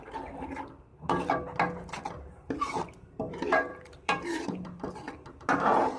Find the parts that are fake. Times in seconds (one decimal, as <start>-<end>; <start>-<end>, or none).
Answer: 3.7-4.9